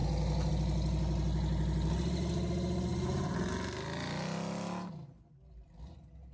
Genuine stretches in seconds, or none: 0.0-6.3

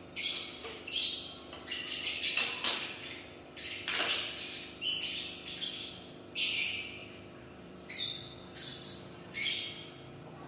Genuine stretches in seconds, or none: 0.0-0.6; 3.1-7.0; 8.2-10.5

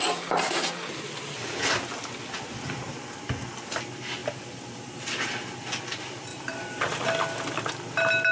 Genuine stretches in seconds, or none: 0.0-4.2; 5.3-6.3; 7.0-8.3

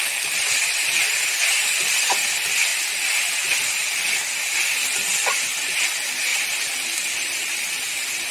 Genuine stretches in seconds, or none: 0.0-1.0; 1.9-2.7; 4.0-6.3; 7.7-8.3

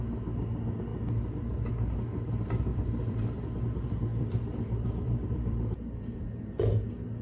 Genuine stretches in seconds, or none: 0.0-0.9; 1.7-2.7; 3.6-4.1; 6.0-7.2

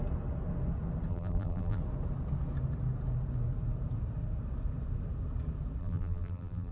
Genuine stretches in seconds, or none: 0.0-1.1; 1.8-5.8

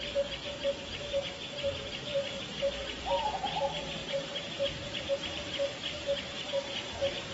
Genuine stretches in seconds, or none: 0.0-4.0; 6.5-7.3

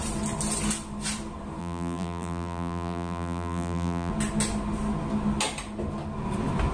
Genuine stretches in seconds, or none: 0.0-1.6; 4.1-6.7